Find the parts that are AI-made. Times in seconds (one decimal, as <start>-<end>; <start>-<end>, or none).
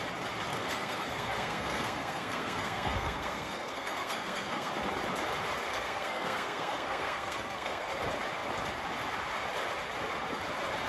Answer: 0.5-4.7; 5.7-7.9